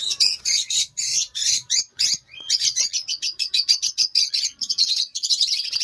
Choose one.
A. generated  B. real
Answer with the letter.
A